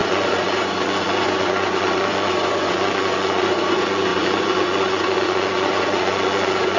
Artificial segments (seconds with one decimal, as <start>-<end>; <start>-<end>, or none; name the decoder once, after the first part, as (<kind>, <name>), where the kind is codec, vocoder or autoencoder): 0.0-6.8 (vocoder, Vocos)